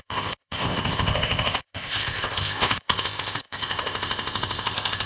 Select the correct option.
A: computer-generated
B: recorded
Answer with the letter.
A